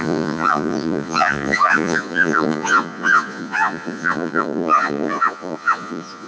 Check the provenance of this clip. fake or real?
fake